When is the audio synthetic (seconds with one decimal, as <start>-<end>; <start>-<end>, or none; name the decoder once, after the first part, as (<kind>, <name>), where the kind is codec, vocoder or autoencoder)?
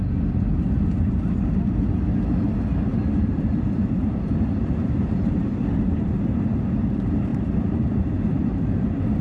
2.9-5.6 (vocoder, BigVGAN v2); 7.3-8.7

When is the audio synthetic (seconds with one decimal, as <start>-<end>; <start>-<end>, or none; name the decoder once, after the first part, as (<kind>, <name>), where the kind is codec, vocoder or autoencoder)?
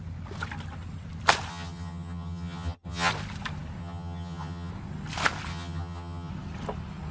1.5-3.1 (vocoder, HiFi-GAN); 3.8-4.7; 5.5-6.3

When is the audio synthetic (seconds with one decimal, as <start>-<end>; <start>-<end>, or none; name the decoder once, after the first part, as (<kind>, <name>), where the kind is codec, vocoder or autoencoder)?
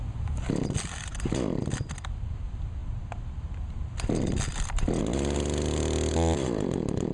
none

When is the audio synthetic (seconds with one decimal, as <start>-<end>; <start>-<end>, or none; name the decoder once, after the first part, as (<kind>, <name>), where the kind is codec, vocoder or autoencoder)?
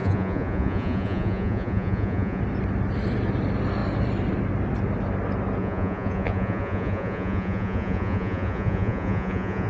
0.0-2.4 (vocoder, Vocos); 5.6-9.7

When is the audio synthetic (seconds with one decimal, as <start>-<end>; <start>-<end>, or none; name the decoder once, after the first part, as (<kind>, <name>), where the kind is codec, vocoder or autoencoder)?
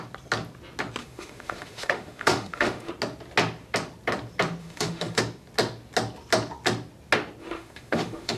1.0-2.9 (autoencoder, DAC-VAE); 4.6-5.2; 7.4-8.4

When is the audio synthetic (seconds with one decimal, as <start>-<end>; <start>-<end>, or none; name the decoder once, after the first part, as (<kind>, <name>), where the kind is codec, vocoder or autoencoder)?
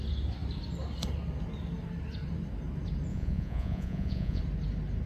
3.1-4.4 (vocoder, Vocos)